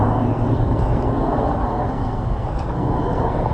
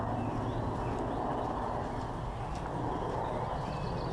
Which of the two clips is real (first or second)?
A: second